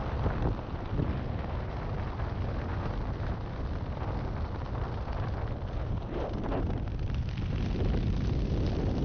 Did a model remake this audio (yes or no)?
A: no